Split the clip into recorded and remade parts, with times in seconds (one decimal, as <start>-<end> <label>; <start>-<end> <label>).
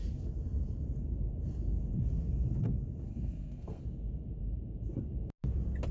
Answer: 0.0-3.1 recorded; 3.1-3.8 remade; 3.8-5.9 recorded